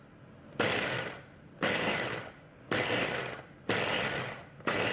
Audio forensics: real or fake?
real